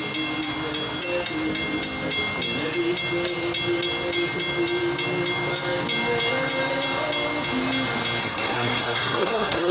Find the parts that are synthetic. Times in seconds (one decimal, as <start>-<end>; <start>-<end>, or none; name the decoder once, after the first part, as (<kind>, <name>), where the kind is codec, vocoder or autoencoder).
8.2-9.7 (codec, SNAC)